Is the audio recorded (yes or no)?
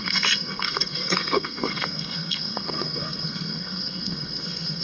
no